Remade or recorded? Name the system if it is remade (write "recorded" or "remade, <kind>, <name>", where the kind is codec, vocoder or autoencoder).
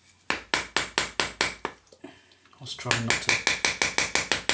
recorded